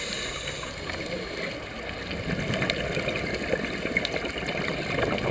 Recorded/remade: recorded